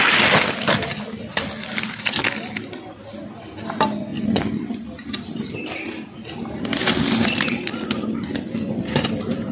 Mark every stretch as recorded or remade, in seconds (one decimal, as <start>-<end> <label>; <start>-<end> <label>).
0.0-9.5 recorded